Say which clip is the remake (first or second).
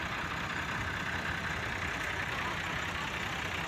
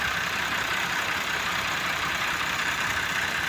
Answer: second